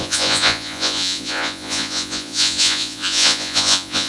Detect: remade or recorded remade